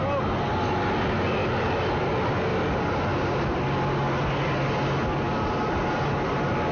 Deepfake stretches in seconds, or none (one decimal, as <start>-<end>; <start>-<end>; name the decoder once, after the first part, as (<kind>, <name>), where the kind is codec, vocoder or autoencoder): none